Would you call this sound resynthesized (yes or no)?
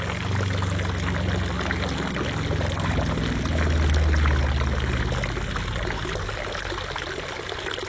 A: no